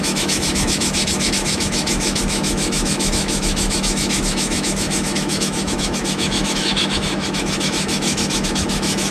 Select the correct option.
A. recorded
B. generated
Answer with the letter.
B